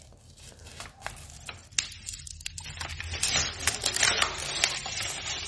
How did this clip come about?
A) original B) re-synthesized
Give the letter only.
A